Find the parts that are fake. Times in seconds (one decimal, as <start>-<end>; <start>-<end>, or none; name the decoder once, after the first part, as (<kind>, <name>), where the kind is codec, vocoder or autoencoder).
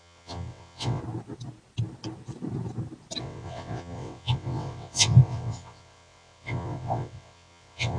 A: 0.0-1.0 (vocoder, WaveNeXt); 3.2-8.0